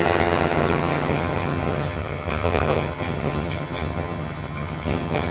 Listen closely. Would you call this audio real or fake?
fake